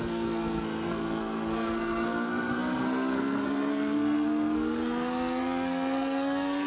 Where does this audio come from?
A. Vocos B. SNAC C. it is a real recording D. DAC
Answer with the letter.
B